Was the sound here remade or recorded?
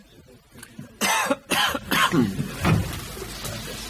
recorded